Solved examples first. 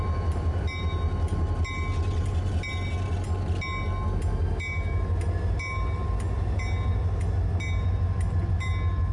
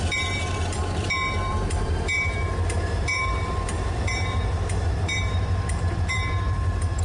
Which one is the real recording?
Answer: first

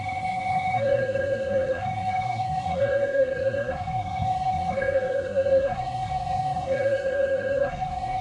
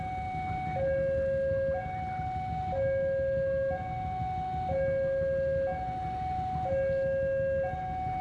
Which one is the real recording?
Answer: second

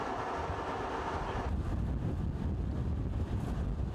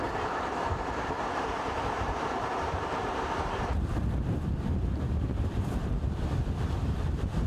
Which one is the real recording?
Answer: first